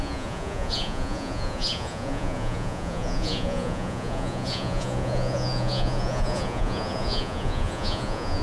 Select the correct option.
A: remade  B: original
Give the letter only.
A